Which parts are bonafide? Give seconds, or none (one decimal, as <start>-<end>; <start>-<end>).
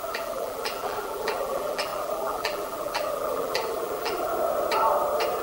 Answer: 4.3-5.4